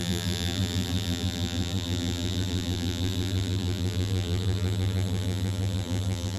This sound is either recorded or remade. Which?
remade